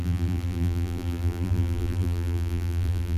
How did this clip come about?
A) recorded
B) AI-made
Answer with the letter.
B